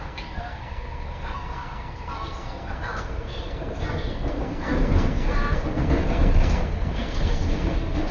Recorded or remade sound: remade